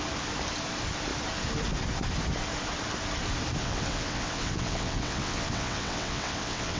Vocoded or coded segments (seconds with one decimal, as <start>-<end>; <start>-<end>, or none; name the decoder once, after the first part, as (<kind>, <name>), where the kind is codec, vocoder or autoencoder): 3.6-6.8 (vocoder, WaveNeXt)

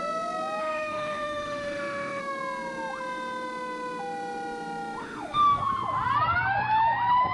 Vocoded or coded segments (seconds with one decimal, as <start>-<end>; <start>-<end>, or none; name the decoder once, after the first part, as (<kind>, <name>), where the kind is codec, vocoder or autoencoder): 0.6-2.2 (autoencoder, DAC-VAE); 5.0-5.6

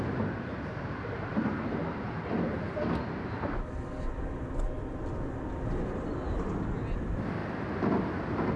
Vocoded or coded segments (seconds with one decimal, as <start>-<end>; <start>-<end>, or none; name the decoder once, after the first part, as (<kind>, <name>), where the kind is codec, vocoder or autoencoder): none

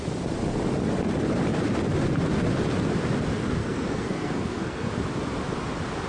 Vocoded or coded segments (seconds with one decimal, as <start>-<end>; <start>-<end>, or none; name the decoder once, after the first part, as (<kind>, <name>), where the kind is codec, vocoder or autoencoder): 3.6-4.9 (codec, SNAC)

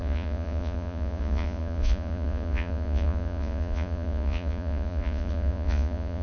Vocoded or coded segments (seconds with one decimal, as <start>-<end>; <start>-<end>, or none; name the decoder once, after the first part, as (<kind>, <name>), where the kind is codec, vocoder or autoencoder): 0.0-6.2 (vocoder, Vocos)

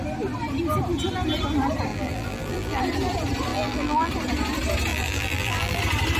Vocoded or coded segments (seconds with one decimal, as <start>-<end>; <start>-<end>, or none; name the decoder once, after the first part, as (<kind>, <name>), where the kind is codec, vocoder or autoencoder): 1.9-2.8 (vocoder, BigVGAN v2); 3.5-4.1; 4.9-5.8

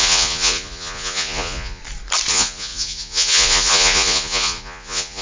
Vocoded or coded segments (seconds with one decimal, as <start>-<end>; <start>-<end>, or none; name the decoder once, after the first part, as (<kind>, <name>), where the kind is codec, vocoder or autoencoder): 0.0-1.8 (vocoder, Vocos); 2.3-5.2